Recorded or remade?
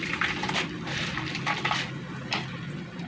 recorded